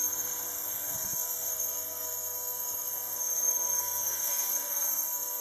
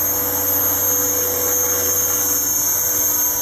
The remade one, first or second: first